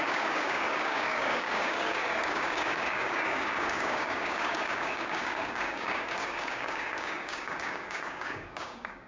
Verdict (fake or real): fake